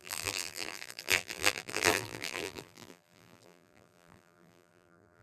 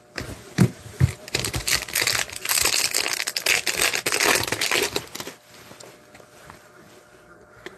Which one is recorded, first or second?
second